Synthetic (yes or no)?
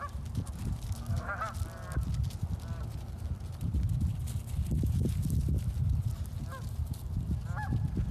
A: no